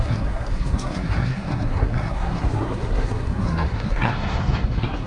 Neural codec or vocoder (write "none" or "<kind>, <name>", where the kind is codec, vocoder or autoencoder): codec, SNAC